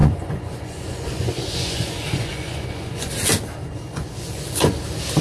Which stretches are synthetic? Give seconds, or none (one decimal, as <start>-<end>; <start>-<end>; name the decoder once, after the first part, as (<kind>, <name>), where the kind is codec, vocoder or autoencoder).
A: 0.0-3.1 (vocoder, Vocos); 3.6-4.8